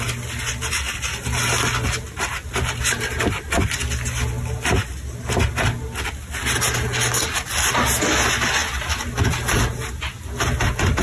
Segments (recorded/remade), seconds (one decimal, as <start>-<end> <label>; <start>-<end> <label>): 0.0-11.0 recorded